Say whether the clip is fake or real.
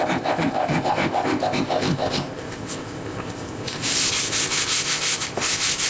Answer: fake